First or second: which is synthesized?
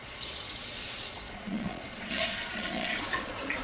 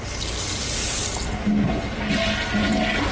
first